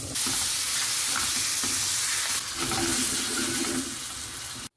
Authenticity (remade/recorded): recorded